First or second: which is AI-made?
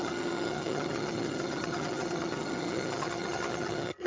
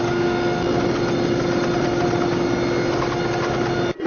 first